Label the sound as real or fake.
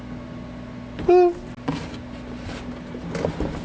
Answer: real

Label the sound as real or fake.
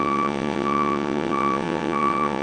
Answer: fake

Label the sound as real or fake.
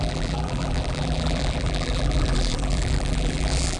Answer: fake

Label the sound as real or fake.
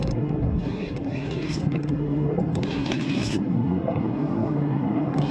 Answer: fake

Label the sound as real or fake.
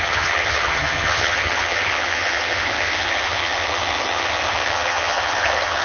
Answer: fake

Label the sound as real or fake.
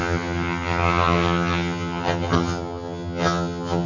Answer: fake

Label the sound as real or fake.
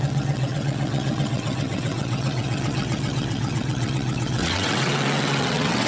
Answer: fake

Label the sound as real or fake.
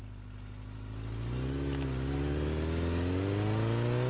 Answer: real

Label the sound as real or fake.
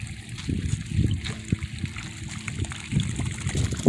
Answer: real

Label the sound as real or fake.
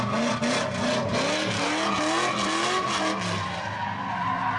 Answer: real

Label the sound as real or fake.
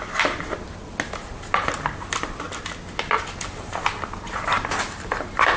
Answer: real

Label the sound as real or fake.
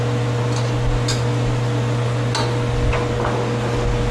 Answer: real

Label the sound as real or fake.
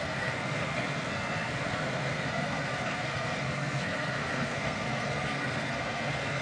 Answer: fake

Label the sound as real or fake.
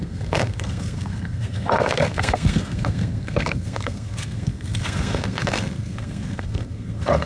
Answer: fake